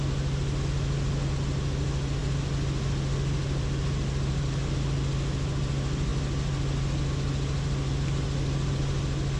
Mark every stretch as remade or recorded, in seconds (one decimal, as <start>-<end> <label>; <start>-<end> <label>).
0.0-9.4 recorded